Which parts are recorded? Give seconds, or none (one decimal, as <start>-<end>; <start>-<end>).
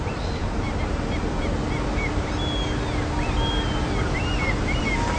0.0-5.2